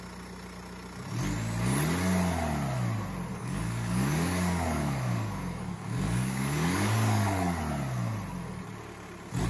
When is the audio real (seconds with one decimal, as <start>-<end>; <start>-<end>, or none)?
0.0-3.3; 7.6-9.5